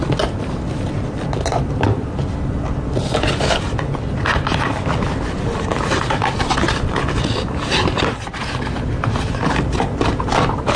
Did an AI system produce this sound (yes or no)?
no